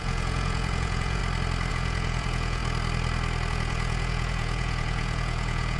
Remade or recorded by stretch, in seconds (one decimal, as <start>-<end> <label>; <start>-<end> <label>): 0.0-1.2 remade; 1.2-1.7 recorded; 1.7-2.6 remade; 2.6-3.5 recorded; 3.5-5.8 remade